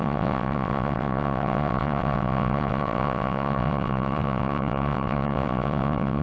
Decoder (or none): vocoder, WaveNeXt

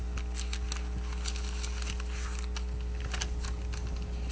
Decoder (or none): none